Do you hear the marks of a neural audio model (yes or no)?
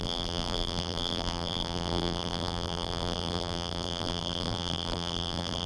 yes